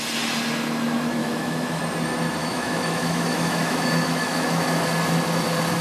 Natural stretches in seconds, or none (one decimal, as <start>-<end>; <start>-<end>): 0.0-1.2; 1.8-2.4; 4.8-5.8